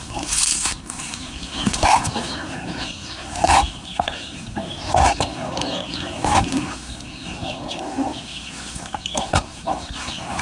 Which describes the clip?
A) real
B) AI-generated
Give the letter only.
B